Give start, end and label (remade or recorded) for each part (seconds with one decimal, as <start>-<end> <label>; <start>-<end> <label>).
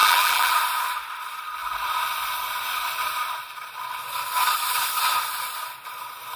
0.0-0.5 remade; 0.5-6.4 recorded